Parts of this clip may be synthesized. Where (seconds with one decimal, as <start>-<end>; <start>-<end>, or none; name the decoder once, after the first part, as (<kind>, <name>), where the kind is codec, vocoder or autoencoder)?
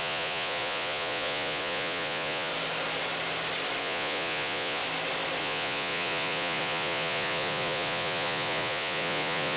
0.0-2.5 (vocoder, Vocos); 3.8-4.8; 5.4-9.6